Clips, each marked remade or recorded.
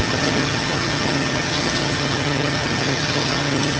remade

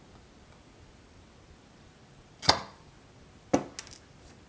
recorded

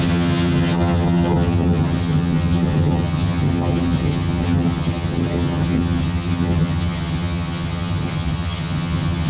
remade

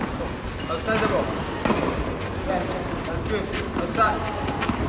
recorded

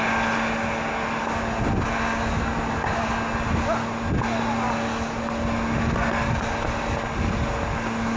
recorded